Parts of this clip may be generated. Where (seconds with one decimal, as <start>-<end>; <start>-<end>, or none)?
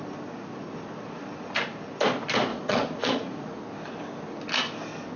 2.5-3.6